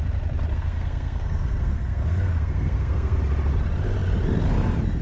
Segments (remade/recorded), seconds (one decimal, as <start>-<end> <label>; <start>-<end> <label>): 0.0-0.5 recorded; 0.5-3.2 remade; 3.2-5.0 recorded